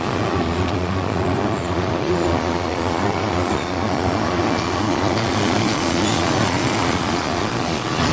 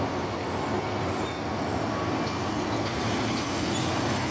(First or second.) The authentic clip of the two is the second